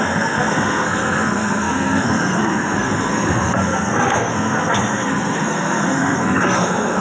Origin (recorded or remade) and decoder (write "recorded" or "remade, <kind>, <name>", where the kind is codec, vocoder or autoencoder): remade, codec, SNAC